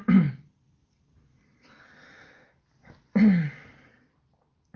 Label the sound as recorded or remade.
recorded